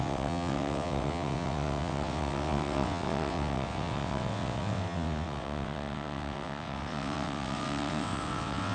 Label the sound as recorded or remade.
remade